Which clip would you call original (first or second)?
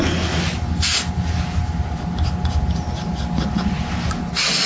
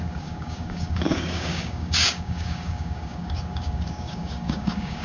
first